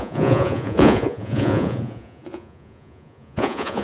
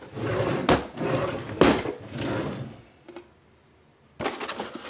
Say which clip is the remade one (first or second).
first